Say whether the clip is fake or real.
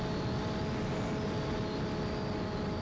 real